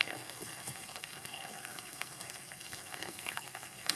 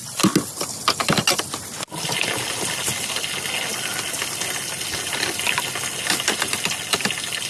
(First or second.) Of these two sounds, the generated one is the first